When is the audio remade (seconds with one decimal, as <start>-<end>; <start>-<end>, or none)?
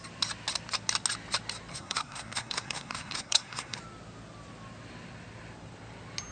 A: 1.7-3.8